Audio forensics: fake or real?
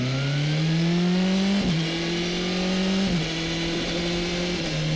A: real